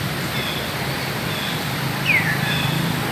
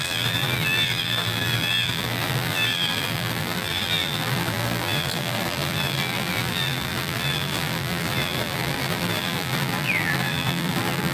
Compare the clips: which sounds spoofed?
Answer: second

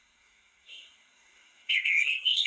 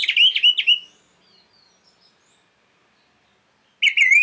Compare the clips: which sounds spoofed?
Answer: first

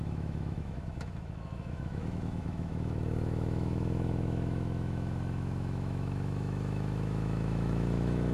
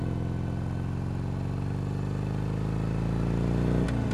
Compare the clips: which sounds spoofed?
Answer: first